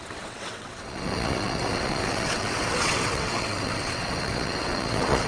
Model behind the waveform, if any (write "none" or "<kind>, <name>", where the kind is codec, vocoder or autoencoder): vocoder, WaveNeXt